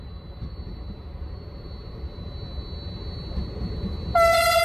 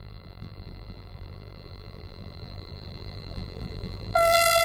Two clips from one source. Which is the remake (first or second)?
second